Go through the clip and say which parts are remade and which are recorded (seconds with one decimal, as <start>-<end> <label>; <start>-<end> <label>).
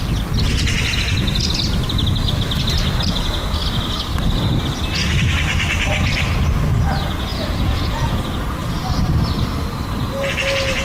0.0-7.3 recorded; 7.3-8.2 remade; 8.2-10.8 recorded